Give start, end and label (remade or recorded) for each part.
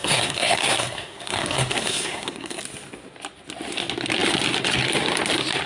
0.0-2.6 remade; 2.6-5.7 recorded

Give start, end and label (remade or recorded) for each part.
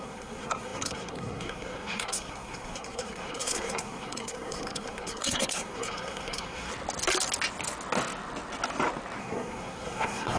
0.0-6.7 remade; 6.7-9.2 recorded; 9.2-10.4 remade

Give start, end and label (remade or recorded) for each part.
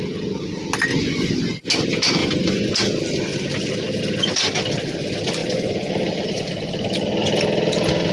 0.0-0.9 recorded; 0.9-1.7 remade; 1.7-2.2 recorded; 2.2-2.7 remade; 2.7-5.4 recorded; 5.4-5.9 remade; 5.9-8.1 recorded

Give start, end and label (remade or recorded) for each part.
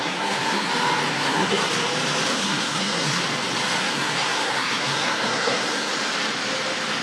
0.0-0.7 remade; 0.7-1.1 recorded; 1.1-1.7 remade; 1.7-2.3 recorded; 2.3-3.2 remade; 3.2-3.8 recorded; 3.8-5.9 remade; 5.9-7.0 recorded